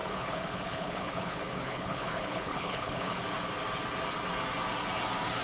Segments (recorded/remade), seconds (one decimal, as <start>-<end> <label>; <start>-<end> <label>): 0.0-3.2 remade; 3.2-5.4 recorded